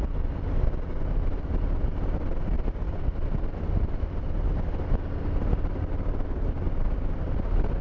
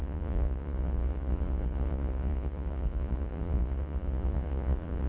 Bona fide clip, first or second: first